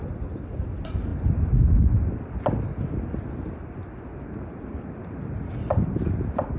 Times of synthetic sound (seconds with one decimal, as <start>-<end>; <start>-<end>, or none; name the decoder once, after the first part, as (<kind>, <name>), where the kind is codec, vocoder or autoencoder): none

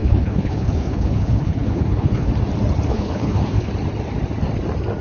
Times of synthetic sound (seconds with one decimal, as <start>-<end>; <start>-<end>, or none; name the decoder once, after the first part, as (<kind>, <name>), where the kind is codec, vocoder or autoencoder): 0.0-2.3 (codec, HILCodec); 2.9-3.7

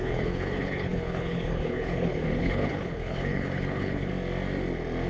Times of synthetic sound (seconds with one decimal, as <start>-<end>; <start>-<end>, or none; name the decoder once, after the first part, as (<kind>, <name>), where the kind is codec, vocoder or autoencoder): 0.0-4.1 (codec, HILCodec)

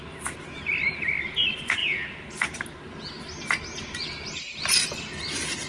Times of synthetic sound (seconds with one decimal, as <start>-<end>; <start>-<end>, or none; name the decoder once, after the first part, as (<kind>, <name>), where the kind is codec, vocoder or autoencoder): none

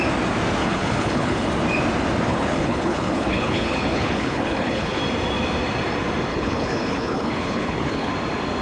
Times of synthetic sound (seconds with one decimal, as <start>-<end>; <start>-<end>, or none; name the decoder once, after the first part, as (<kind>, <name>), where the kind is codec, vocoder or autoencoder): 0.6-1.5 (codec, HILCodec); 2.3-5.0; 6.3-8.1

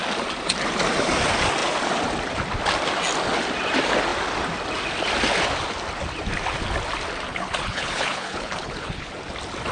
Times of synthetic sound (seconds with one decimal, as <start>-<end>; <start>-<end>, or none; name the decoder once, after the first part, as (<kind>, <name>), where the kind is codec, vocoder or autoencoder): 7.3-9.1 (codec, HILCodec)

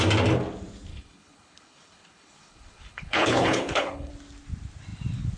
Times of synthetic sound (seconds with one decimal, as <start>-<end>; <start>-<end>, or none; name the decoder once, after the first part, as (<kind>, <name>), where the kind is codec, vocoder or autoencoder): 0.9-4.1 (codec, HILCodec)